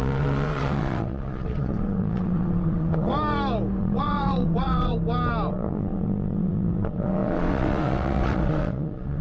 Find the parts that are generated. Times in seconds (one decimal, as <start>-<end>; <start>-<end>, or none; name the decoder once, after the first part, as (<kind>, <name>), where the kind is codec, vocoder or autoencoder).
0.0-3.1 (vocoder, WaveNeXt); 3.8-4.9; 5.5-9.2

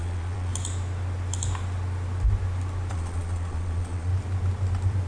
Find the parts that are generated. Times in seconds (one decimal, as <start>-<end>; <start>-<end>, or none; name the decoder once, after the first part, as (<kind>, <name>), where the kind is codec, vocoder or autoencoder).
0.0-0.5 (vocoder, Vocos); 2.9-4.1

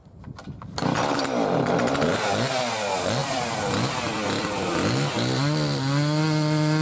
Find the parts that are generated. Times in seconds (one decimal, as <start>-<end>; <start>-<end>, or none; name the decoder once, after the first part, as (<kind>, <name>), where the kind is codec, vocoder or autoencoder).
3.2-3.7 (vocoder, BigVGAN v2)

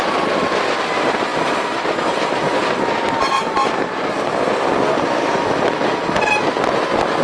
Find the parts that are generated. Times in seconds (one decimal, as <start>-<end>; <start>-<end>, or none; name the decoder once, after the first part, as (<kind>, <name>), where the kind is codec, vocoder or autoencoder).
none

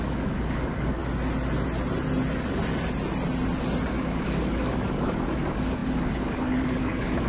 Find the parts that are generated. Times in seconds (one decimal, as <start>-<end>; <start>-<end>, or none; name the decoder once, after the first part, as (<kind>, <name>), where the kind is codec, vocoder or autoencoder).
0.0-1.0 (codec, DAC); 4.0-7.3

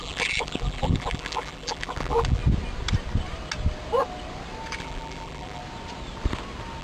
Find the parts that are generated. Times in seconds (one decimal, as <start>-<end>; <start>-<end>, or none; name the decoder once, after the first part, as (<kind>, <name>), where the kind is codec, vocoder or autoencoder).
0.0-2.4 (vocoder, BigVGAN v2); 4.8-5.6

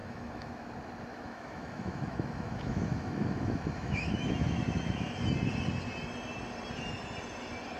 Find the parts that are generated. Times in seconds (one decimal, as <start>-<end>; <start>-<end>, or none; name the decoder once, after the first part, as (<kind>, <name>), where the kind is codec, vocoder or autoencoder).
0.0-0.5 (autoencoder, DAC-VAE); 1.1-5.1